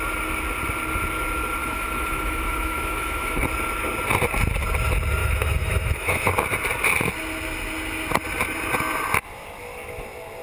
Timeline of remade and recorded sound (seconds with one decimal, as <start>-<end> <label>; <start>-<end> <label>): 0.0-1.6 recorded; 1.6-3.4 remade; 3.4-5.2 recorded; 5.2-6.3 remade; 6.3-10.4 recorded